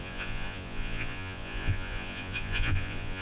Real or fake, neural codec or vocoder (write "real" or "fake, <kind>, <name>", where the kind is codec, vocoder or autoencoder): fake, vocoder, Vocos